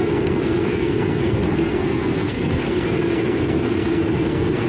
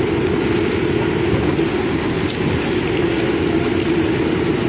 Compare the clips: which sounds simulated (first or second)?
first